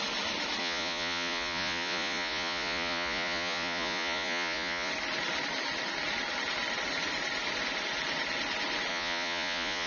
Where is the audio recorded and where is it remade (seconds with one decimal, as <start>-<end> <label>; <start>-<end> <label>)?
0.0-0.6 recorded; 0.6-4.9 remade; 4.9-8.9 recorded; 8.9-9.9 remade